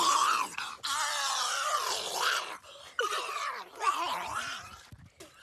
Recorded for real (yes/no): yes